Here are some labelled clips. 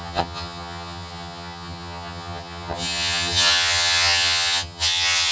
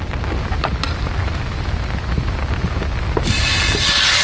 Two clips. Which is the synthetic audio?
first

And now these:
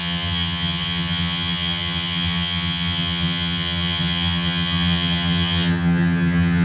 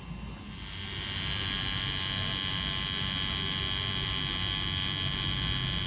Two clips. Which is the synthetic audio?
first